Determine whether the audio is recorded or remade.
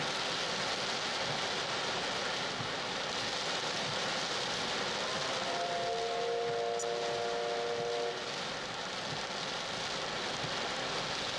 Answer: recorded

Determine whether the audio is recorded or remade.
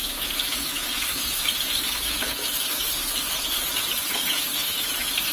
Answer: remade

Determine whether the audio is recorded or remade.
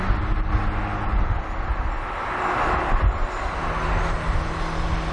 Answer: recorded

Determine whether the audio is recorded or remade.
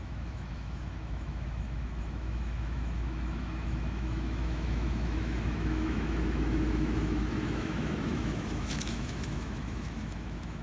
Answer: remade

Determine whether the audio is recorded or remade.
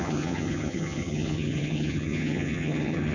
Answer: remade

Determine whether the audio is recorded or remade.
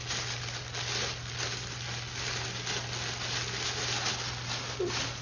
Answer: recorded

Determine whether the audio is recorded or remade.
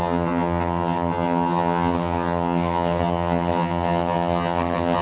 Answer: remade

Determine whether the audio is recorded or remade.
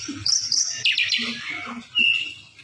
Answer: remade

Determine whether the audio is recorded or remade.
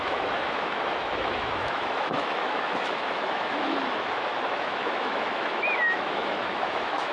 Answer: remade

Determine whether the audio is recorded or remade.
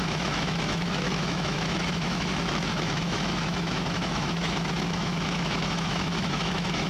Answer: remade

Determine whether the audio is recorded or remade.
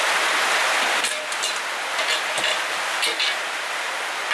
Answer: recorded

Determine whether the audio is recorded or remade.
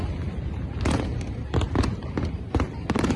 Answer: remade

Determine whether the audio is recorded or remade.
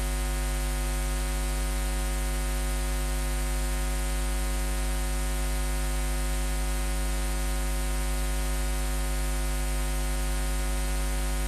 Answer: recorded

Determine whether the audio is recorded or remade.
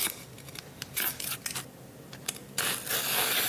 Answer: recorded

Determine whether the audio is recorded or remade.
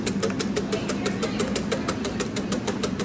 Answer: recorded